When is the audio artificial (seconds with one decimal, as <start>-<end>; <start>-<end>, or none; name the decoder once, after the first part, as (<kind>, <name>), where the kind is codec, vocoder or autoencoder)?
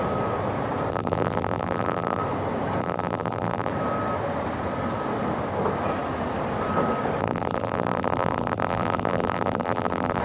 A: 0.9-2.2 (vocoder, BigVGAN v2); 2.8-3.7; 7.2-10.2